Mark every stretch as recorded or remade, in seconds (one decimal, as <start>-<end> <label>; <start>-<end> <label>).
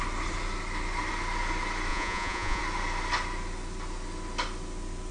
0.0-1.9 recorded; 1.9-2.6 remade; 2.6-5.1 recorded